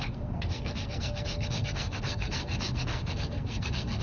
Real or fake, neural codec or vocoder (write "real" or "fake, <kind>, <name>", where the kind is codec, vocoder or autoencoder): fake, codec, SNAC